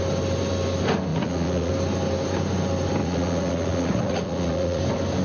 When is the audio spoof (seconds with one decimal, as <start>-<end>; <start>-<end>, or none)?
1.1-1.7; 3.0-4.8